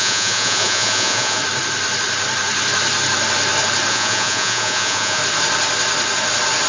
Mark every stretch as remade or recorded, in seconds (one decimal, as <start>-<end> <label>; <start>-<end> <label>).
0.0-1.4 remade; 1.4-3.9 recorded; 3.9-5.2 remade; 5.2-6.7 recorded